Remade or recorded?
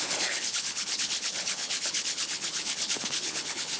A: remade